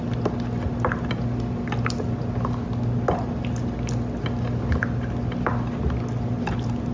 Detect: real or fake real